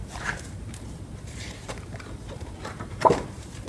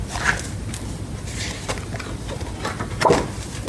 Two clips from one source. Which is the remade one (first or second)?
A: first